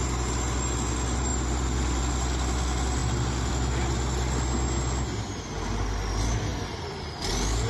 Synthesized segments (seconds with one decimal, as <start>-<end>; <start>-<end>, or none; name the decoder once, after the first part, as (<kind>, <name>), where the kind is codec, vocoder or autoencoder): 1.3-2.0 (vocoder, BigVGAN v2); 6.5-7.3